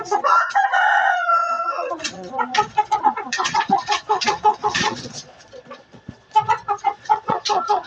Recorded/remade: remade